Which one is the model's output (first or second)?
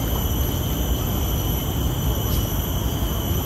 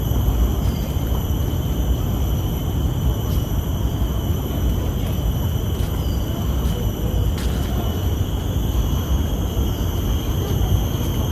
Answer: second